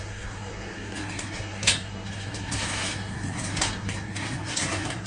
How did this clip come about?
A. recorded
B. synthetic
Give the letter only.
B